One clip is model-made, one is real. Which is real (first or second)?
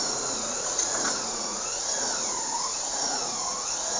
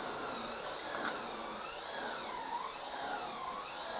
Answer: second